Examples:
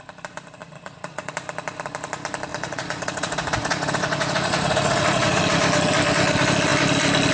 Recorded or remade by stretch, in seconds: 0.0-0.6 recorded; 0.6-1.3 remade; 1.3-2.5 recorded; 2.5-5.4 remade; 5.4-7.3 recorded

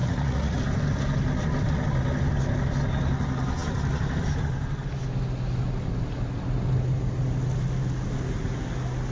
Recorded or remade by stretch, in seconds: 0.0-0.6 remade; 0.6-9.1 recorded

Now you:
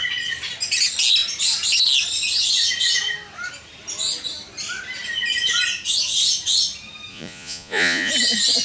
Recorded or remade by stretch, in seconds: 0.0-7.1 recorded; 7.1-8.1 remade; 8.1-8.6 recorded